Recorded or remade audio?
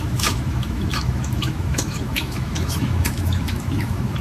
remade